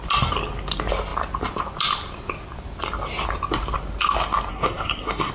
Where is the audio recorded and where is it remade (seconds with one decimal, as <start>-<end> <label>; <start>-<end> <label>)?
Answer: 0.0-4.5 recorded; 4.5-5.3 remade